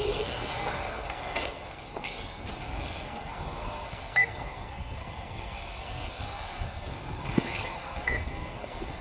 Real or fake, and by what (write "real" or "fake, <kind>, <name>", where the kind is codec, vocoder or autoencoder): fake, codec, SNAC